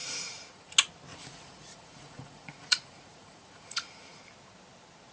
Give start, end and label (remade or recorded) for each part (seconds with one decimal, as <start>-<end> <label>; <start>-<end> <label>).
0.0-0.7 remade; 0.7-1.1 recorded; 1.1-4.2 remade; 4.2-5.1 recorded